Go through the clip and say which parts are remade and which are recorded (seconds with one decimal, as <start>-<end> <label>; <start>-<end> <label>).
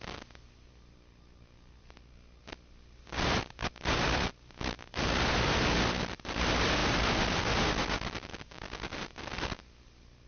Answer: 0.0-10.3 recorded